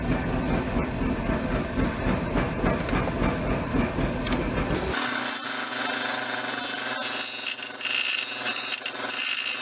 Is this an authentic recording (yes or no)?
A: yes